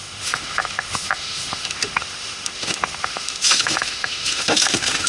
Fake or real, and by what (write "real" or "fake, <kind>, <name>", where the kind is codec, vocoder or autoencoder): fake, autoencoder, DAC-VAE